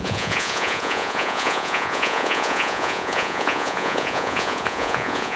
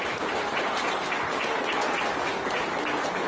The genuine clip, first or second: second